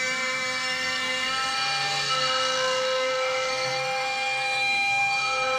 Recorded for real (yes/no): no